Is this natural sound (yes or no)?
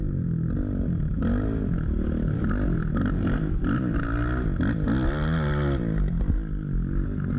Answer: yes